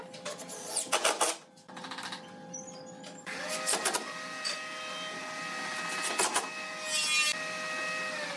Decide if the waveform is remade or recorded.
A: recorded